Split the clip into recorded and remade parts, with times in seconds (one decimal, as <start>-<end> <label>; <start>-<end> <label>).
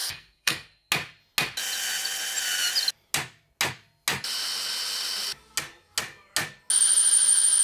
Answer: 0.0-0.9 remade; 0.9-7.6 recorded